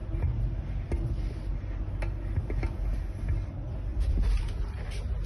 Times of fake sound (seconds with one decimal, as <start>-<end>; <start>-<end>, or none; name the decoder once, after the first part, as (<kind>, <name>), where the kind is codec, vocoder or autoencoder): none